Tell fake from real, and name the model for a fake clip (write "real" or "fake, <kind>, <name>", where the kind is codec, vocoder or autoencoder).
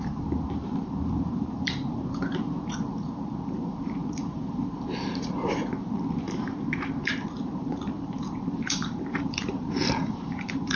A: fake, vocoder, BigVGAN v2